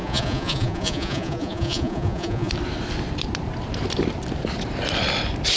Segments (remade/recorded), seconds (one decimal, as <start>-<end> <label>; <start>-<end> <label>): 0.0-2.5 remade; 2.5-5.6 recorded